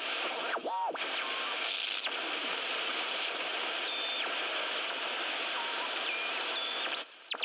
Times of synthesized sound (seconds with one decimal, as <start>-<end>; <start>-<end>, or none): 0.0-0.6; 2.4-3.5; 4.9-7.4